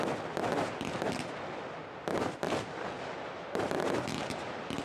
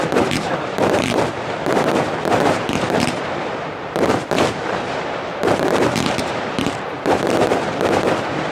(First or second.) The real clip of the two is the first